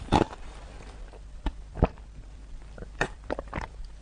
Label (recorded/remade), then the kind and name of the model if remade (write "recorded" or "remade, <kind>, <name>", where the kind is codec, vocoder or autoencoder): remade, vocoder, BigVGAN v2